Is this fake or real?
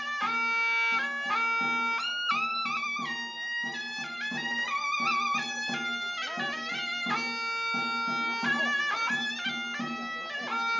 real